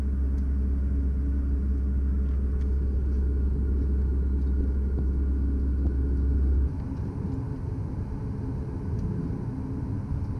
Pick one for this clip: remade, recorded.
recorded